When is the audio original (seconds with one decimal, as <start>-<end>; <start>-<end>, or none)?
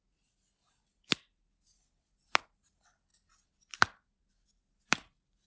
0.0-5.5